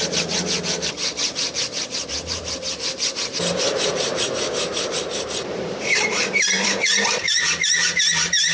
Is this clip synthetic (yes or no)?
yes